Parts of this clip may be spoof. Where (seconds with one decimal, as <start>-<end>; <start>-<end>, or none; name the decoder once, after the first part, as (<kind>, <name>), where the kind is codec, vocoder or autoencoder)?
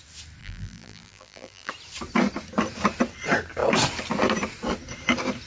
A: 0.4-1.7 (vocoder, BigVGAN v2)